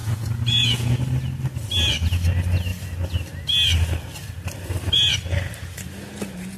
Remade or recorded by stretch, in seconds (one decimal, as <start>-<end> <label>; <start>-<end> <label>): 0.0-1.0 remade; 1.0-6.6 recorded